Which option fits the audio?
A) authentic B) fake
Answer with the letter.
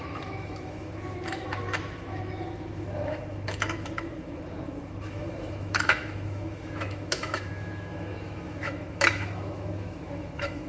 B